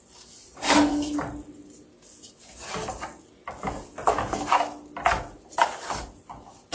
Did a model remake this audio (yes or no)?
no